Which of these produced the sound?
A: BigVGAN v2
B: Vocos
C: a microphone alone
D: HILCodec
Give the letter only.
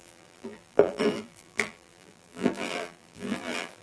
A